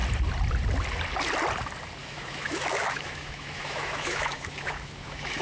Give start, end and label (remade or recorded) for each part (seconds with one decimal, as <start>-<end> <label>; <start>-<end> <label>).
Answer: 0.0-2.0 recorded; 2.0-5.4 remade